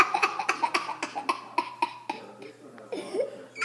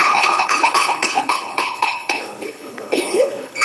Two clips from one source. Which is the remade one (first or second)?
second